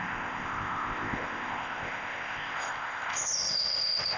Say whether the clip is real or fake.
fake